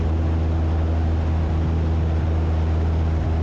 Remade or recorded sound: recorded